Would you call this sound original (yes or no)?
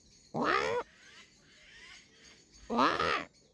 yes